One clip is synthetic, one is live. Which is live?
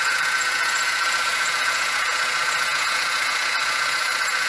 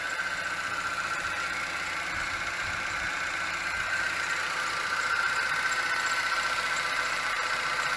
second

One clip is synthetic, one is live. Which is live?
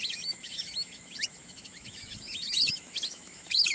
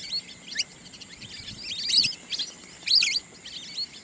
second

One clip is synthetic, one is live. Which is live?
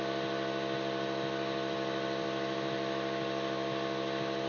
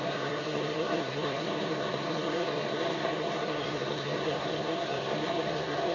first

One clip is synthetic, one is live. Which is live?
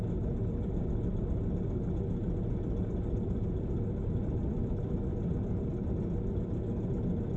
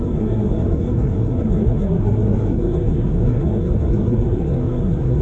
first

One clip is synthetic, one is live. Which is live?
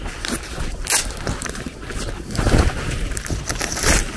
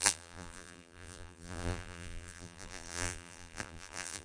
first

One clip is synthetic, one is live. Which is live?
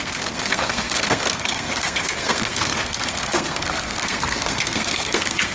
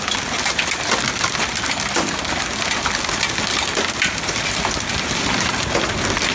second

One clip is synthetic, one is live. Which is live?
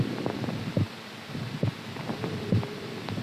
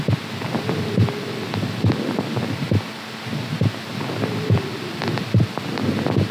second